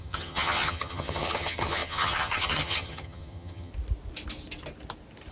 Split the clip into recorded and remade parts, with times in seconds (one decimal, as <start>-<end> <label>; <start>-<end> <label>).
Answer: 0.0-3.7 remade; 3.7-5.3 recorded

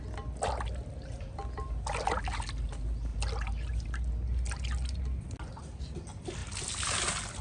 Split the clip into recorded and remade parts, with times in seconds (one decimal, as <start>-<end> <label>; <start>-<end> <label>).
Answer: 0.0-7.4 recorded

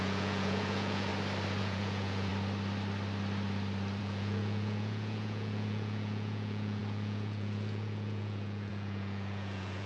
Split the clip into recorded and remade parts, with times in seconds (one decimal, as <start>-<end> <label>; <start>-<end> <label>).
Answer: 0.0-1.1 remade; 1.1-1.6 recorded; 1.6-2.3 remade; 2.3-4.0 recorded; 4.0-9.9 remade